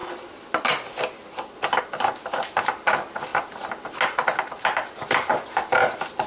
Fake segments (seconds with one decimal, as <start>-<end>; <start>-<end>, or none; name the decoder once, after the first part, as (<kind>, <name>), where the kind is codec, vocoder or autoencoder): none